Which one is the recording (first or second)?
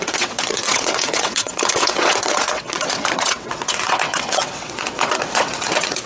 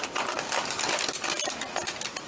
second